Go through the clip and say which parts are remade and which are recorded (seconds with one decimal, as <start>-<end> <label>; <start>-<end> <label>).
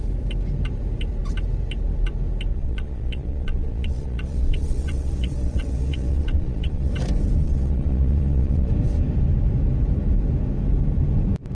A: 0.0-2.5 recorded; 2.5-6.9 remade; 6.9-7.4 recorded; 7.4-8.7 remade; 8.7-11.5 recorded